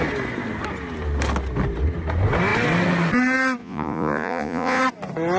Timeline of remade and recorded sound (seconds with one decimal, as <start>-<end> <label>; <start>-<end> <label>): 0.0-3.6 recorded; 3.6-4.8 remade; 4.8-5.4 recorded